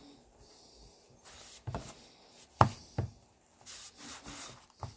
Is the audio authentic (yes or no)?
yes